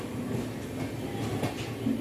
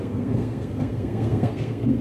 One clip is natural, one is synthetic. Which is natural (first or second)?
first